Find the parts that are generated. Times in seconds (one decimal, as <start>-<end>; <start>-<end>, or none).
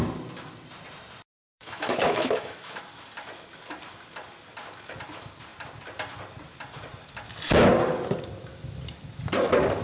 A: 1.3-2.8